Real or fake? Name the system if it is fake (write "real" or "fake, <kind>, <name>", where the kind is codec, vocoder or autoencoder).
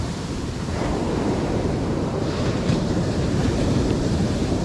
fake, vocoder, BigVGAN v2